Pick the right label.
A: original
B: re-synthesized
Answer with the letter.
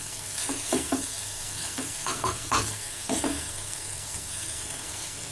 B